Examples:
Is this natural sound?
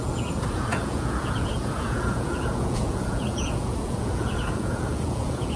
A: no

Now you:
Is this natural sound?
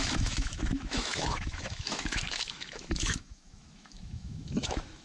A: no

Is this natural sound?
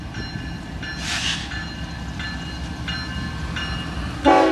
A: yes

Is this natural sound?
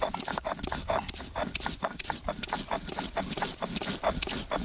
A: yes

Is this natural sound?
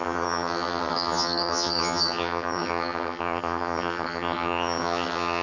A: no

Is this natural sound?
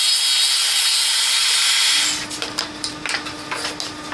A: yes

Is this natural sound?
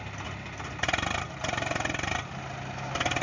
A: yes